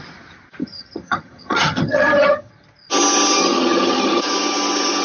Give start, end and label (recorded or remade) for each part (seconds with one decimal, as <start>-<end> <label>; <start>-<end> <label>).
0.0-0.6 recorded; 0.6-2.5 remade; 2.5-3.4 recorded; 3.4-4.2 remade; 4.2-5.0 recorded